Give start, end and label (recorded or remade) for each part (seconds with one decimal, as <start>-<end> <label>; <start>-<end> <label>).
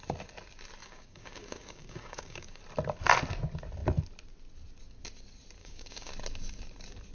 0.0-0.8 recorded; 0.8-2.6 remade; 2.6-5.6 recorded; 5.6-6.1 remade; 6.1-7.1 recorded